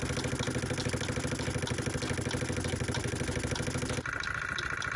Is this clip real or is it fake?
real